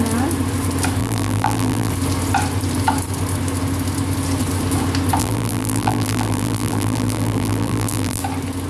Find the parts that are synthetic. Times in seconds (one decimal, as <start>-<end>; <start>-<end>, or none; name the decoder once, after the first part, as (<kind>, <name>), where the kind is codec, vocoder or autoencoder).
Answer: 1.0-1.9 (vocoder, BigVGAN v2); 5.2-8.2